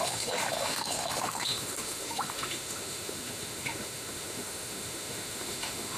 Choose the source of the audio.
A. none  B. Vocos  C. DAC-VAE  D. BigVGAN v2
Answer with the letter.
C